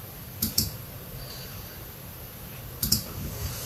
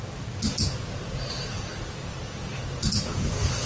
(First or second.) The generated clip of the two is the first